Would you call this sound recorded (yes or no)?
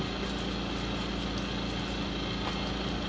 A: yes